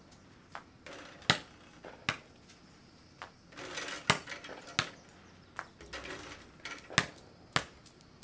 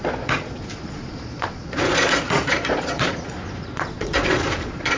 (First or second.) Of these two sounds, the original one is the first